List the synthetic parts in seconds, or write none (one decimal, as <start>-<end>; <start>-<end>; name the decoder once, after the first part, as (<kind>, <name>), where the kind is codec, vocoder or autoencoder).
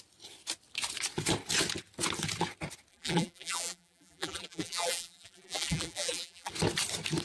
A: 2.9-6.5 (vocoder, BigVGAN v2)